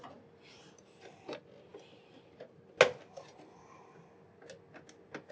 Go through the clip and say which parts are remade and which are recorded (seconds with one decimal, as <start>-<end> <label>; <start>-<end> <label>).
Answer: 0.0-5.3 recorded